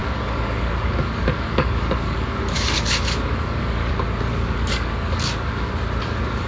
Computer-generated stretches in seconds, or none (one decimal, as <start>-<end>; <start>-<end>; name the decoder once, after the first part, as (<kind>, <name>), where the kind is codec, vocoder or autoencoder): 0.0-3.9 (codec, DAC); 4.3-5.7